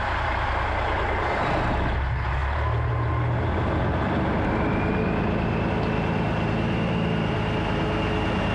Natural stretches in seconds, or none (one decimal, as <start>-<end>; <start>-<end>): 0.0-8.5